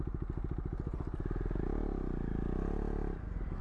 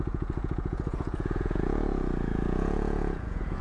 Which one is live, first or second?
first